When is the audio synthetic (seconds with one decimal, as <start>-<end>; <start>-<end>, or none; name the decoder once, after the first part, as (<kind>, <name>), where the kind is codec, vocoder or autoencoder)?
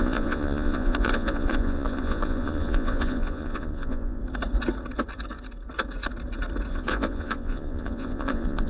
0.0-4.2 (vocoder, Vocos); 6.7-8.7